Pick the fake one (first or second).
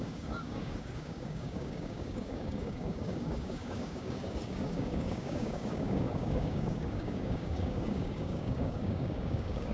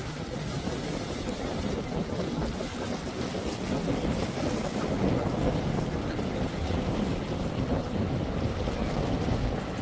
first